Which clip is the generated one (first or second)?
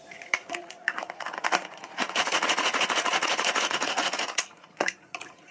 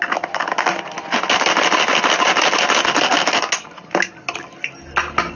first